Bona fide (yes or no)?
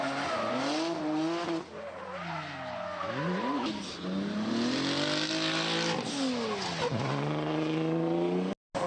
yes